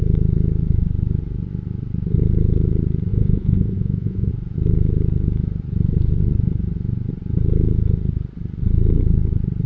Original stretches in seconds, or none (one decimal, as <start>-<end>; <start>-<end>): 0.0-3.1; 4.3-9.7